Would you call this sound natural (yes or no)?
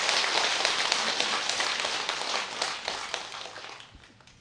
yes